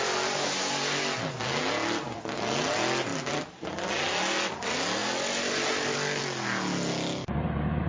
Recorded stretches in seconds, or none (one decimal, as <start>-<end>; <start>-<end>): 0.0-3.1; 3.7-7.9